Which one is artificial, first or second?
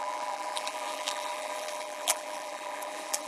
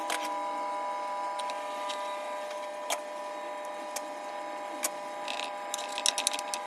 first